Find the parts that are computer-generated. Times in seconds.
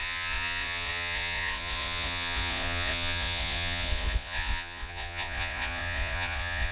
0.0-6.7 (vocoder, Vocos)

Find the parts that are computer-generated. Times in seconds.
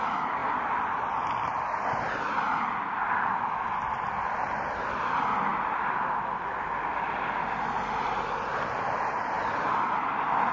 0.4-2.2 (vocoder, BigVGAN v2)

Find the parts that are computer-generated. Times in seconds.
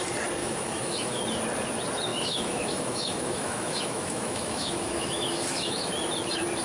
0.4-1.2 (autoencoder, DAC-VAE); 2.1-5.9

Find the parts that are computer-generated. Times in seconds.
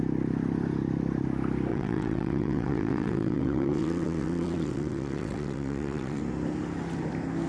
1.7-6.2 (vocoder, WaveNeXt)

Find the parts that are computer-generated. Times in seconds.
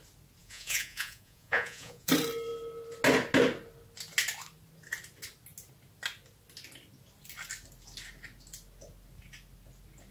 0.4-2.1 (vocoder, Vocos)